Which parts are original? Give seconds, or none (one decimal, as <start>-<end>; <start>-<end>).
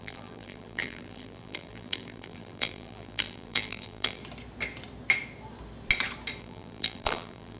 4.2-6.4